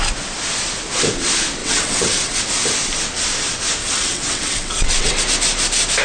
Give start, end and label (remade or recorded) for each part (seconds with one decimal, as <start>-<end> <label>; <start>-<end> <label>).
0.0-1.6 recorded; 1.6-2.4 remade; 2.4-3.8 recorded; 3.8-5.2 remade; 5.2-6.0 recorded